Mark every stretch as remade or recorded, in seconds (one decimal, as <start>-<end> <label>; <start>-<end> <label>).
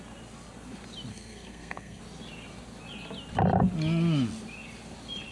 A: 0.0-1.1 recorded; 1.1-2.0 remade; 2.0-5.3 recorded